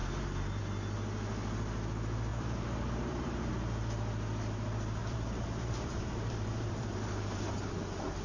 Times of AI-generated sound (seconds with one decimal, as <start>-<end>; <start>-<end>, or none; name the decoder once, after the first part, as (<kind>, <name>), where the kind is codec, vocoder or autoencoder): 0.0-0.6 (vocoder, BigVGAN v2); 2.3-3.5; 5.0-7.5